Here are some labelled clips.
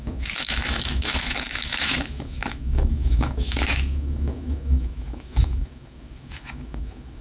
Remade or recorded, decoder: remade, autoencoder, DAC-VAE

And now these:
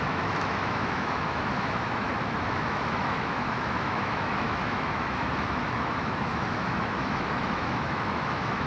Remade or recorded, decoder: remade, autoencoder, DAC-VAE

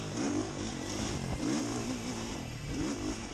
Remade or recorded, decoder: recorded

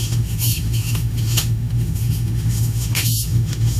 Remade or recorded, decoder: remade, autoencoder, DAC-VAE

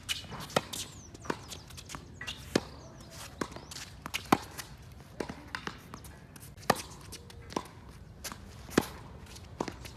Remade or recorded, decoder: recorded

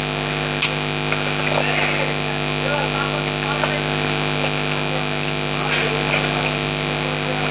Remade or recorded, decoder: recorded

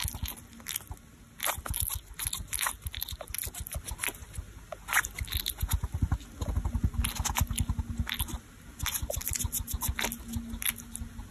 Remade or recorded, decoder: recorded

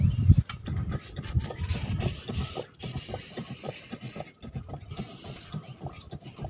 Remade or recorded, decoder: recorded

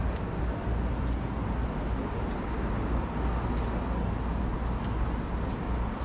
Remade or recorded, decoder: recorded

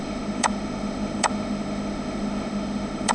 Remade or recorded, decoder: remade, autoencoder, DAC-VAE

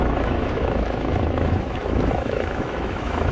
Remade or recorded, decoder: remade, autoencoder, DAC-VAE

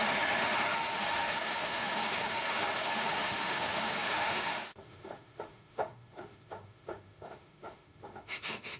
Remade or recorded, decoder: remade, autoencoder, DAC-VAE